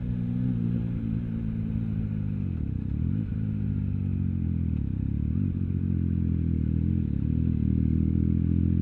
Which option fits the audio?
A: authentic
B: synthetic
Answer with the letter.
A